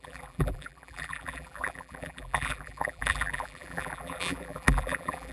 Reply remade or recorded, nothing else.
remade